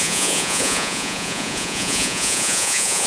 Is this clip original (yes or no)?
no